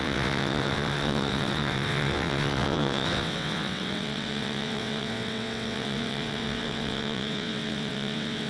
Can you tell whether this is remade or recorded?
remade